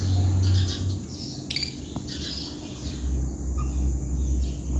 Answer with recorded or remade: recorded